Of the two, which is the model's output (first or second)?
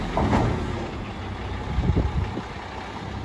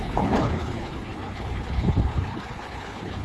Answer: second